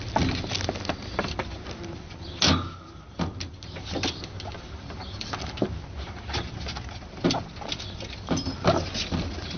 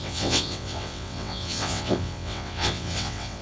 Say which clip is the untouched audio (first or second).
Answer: first